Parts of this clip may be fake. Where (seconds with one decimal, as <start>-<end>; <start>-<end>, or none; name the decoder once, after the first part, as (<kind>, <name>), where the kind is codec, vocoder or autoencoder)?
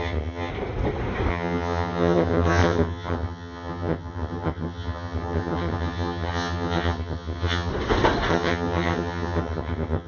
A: 0.0-0.5 (vocoder, HiFi-GAN); 1.3-7.7; 8.3-10.1